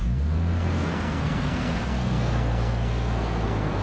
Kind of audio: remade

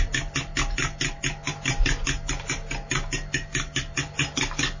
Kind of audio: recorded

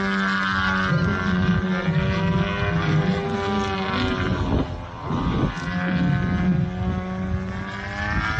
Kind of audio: recorded